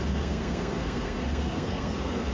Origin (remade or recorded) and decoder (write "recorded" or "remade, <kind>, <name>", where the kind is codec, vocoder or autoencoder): remade, codec, SNAC